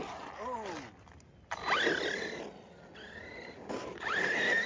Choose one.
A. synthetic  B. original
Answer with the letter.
B